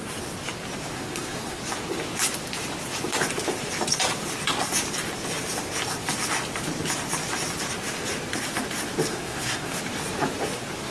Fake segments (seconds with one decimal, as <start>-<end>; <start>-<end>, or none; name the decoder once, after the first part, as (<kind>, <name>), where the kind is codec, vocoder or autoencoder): 0.9-1.6 (codec, SNAC); 9.1-9.8

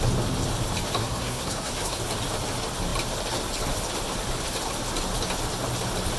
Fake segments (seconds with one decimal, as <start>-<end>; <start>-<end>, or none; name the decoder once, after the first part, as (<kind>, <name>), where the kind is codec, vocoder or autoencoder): 1.0-2.0 (codec, SNAC)

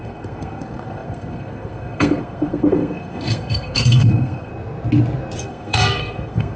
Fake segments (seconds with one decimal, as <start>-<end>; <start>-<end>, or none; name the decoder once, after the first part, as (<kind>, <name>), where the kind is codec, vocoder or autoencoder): 0.0-4.5 (codec, SNAC); 5.4-6.6

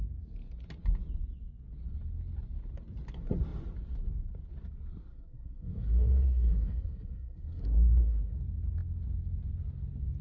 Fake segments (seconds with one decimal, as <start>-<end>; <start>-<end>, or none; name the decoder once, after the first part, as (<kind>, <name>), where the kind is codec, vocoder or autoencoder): 5.0-8.4 (codec, SNAC)

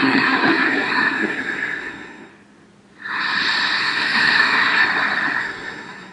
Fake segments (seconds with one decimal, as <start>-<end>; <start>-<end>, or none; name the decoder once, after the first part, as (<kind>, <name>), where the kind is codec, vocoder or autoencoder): 0.0-2.3 (codec, SNAC); 3.8-4.8; 5.4-6.1